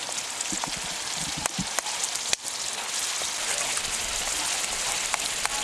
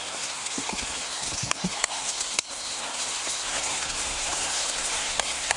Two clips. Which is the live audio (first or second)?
first